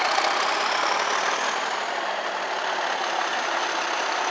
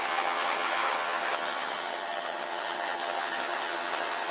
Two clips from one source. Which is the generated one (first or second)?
second